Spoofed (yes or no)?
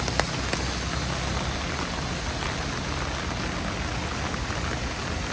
no